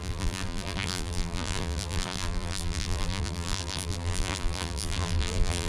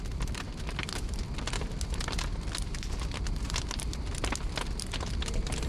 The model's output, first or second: first